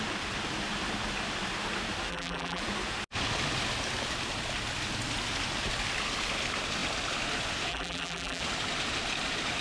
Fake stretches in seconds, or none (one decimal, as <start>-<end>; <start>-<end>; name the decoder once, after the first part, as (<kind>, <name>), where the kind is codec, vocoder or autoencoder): 2.1-2.6 (vocoder, BigVGAN v2); 7.7-8.4